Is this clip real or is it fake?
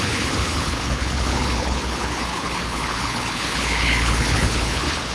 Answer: fake